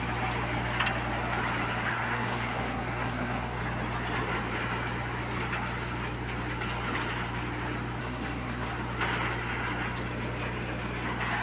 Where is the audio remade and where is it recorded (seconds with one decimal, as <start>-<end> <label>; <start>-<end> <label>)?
0.0-1.9 recorded; 1.9-3.6 remade; 3.6-8.0 recorded; 8.0-8.7 remade; 8.7-11.4 recorded